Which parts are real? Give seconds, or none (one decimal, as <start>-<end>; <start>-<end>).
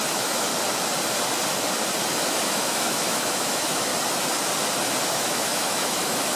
0.5-2.1; 3.9-5.0